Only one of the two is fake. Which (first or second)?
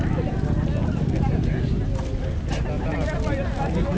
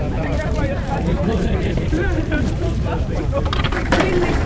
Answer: second